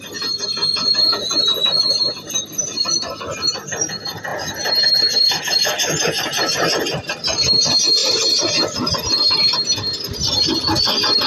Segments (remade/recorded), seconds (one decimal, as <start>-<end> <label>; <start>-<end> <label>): 0.0-0.6 recorded; 0.6-1.9 remade; 1.9-11.3 recorded